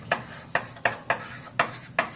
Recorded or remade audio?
recorded